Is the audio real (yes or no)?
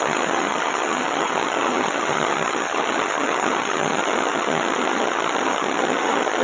no